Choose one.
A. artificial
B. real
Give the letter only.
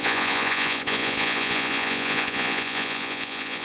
A